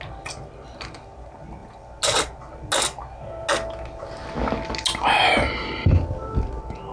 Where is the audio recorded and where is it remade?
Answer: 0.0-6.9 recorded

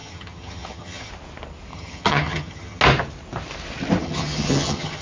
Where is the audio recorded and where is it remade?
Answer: 0.0-1.1 remade; 1.1-1.7 recorded; 1.7-2.8 remade; 2.8-4.0 recorded; 4.0-5.0 remade

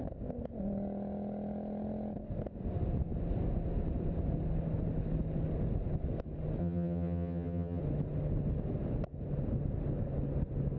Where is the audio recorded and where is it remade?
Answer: 0.0-6.6 recorded; 6.6-7.8 remade; 7.8-10.8 recorded

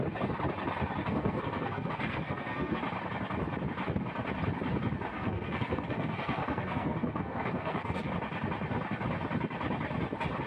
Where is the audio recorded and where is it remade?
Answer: 0.0-1.0 recorded; 1.0-2.8 remade; 2.8-5.1 recorded; 5.1-8.1 remade; 8.1-10.5 recorded

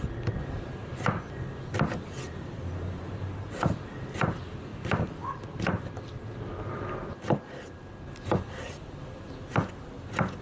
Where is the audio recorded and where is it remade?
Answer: 0.0-10.4 recorded

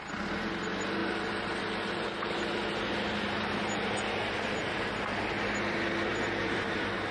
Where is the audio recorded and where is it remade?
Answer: 0.0-1.0 recorded; 1.0-5.0 remade; 5.0-6.1 recorded; 6.1-7.1 remade

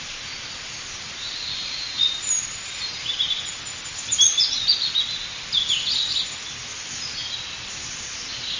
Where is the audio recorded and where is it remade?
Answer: 0.0-1.6 recorded; 1.6-2.3 remade; 2.3-8.6 recorded